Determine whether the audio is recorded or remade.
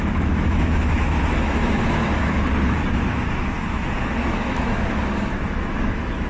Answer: remade